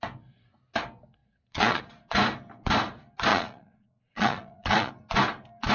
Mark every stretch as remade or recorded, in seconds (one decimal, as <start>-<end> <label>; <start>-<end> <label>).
0.0-1.2 recorded; 1.2-1.8 remade; 1.8-3.3 recorded; 3.3-4.9 remade; 4.9-5.7 recorded